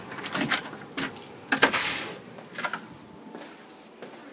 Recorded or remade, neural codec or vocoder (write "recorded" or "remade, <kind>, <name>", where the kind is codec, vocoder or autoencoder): recorded